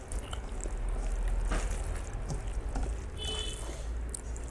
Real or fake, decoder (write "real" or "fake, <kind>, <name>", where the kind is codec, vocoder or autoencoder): real